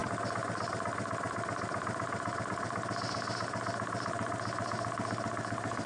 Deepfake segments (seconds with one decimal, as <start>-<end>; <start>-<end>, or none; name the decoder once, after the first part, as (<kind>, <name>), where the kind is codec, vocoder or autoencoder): none

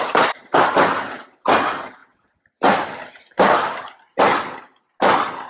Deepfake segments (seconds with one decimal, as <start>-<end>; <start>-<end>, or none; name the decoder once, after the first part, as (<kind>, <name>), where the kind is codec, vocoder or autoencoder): none

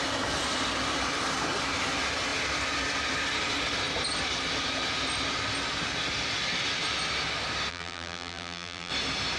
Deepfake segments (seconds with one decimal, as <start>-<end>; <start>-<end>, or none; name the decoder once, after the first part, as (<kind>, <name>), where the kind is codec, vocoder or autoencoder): 7.7-8.9 (vocoder, BigVGAN v2)

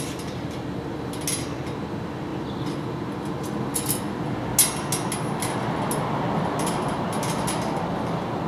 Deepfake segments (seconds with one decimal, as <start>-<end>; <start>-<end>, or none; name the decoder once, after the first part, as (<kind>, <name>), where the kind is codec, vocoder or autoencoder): none

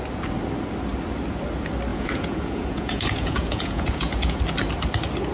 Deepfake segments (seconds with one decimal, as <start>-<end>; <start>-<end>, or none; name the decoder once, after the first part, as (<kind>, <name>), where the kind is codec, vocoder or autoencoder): 1.9-4.4 (vocoder, Vocos)

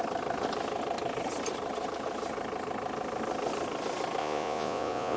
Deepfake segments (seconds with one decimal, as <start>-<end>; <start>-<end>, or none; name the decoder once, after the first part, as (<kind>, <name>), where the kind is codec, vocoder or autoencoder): 4.2-5.2 (vocoder, Vocos)

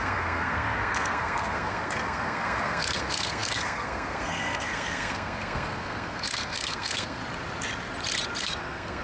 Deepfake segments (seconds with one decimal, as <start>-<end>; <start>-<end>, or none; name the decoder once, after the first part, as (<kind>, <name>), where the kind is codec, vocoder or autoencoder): 0.0-7.2 (codec, SNAC); 8.4-9.0

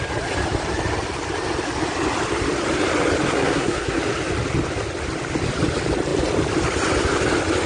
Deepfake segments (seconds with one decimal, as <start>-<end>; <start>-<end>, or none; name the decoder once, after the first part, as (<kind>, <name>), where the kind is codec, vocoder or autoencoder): 3.3-4.0 (codec, SNAC)